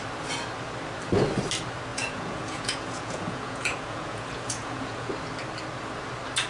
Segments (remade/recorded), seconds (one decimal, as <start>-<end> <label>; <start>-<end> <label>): 0.0-1.9 recorded; 1.9-5.1 remade; 5.1-6.5 recorded